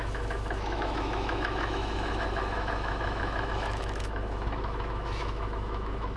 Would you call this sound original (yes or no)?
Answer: no